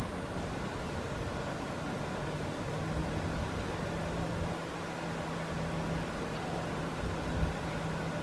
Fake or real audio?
real